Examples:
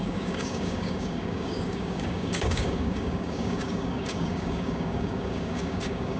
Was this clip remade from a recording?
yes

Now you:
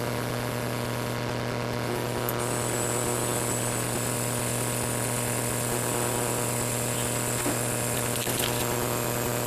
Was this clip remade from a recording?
no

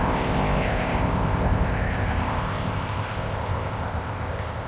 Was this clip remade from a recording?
yes